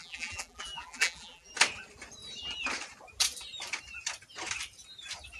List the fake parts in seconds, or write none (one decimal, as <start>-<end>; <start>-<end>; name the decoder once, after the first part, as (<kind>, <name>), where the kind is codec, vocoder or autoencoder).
0.0-1.5 (vocoder, BigVGAN v2)